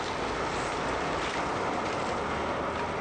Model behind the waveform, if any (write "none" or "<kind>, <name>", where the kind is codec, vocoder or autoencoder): none